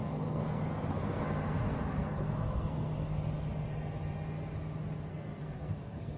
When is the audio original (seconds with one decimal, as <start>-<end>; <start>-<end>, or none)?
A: 3.2-5.1